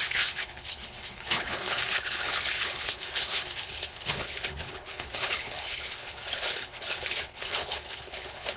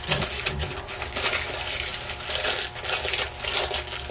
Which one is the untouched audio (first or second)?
second